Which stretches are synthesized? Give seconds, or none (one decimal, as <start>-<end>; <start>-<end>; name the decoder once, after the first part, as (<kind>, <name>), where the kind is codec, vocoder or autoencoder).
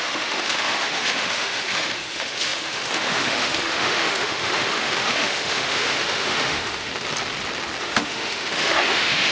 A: 0.0-6.9 (autoencoder, DAC-VAE); 7.8-9.3